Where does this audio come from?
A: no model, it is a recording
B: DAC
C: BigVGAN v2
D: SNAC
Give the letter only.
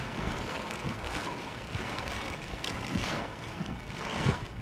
D